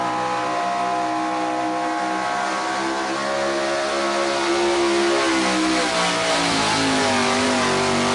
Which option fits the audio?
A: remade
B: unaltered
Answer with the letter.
B